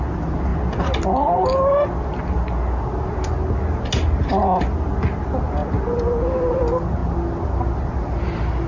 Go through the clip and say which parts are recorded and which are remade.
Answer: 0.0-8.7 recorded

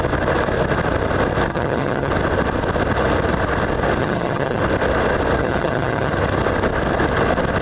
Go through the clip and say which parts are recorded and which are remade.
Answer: 0.0-1.5 recorded; 1.5-2.1 remade; 2.1-4.0 recorded; 4.0-4.6 remade; 4.6-5.4 recorded; 5.4-6.1 remade; 6.1-7.6 recorded

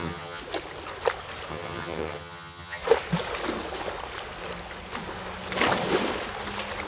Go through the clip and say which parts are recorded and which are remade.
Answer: 0.0-0.4 remade; 0.4-1.5 recorded; 1.5-2.8 remade; 2.8-6.9 recorded

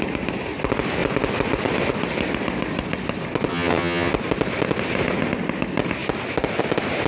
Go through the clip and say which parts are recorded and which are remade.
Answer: 0.0-3.5 recorded; 3.5-4.1 remade; 4.1-7.1 recorded

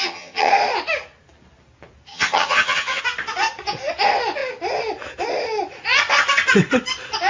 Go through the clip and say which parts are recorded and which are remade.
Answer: 0.0-0.5 remade; 0.5-2.1 recorded; 2.1-3.0 remade; 3.0-7.3 recorded

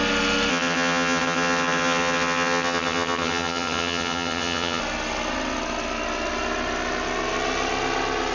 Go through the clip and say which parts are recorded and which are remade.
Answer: 0.0-0.5 recorded; 0.5-4.8 remade; 4.8-8.3 recorded

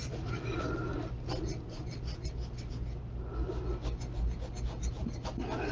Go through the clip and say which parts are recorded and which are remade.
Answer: 0.0-5.7 recorded

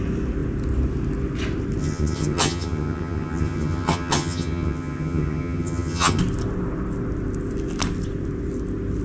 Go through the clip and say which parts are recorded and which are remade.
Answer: 0.0-1.8 recorded; 1.8-6.2 remade; 6.2-9.0 recorded